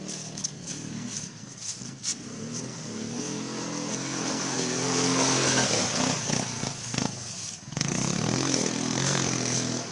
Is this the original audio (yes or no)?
no